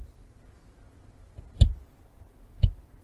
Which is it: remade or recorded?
recorded